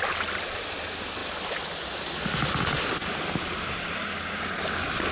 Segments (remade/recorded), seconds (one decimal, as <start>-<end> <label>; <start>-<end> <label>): 0.0-5.1 recorded